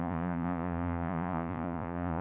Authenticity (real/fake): fake